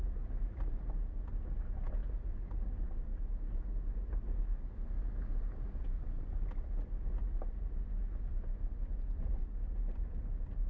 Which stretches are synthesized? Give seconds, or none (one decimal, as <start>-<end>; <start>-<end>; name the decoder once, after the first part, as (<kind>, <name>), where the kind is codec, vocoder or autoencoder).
none